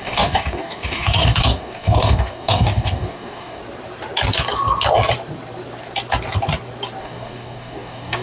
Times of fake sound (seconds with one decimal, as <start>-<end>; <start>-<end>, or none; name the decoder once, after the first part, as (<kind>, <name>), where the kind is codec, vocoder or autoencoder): 0.0-3.6 (codec, DAC); 7.0-8.2